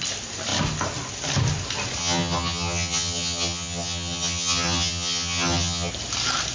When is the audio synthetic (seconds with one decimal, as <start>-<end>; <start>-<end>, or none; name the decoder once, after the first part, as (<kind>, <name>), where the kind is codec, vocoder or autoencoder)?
2.0-5.9 (vocoder, HiFi-GAN)

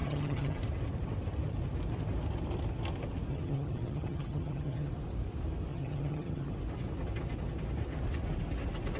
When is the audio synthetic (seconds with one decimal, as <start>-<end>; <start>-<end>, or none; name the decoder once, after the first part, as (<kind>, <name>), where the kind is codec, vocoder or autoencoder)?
0.0-0.6 (vocoder, HiFi-GAN); 3.3-4.9; 5.7-6.5